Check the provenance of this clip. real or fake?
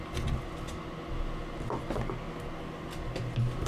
real